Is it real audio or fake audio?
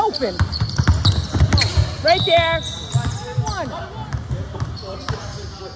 real